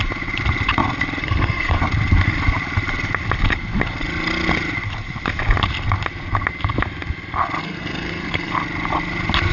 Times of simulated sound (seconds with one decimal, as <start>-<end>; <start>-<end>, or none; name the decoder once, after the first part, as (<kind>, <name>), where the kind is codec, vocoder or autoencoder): 1.2-1.8 (codec, SNAC); 7.6-8.5